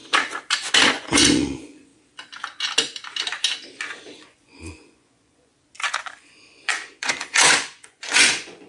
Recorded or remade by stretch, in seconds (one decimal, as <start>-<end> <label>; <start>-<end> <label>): 0.0-0.9 recorded; 0.9-1.9 remade; 1.9-4.2 recorded; 4.2-5.5 remade; 5.5-6.0 recorded; 6.0-8.7 remade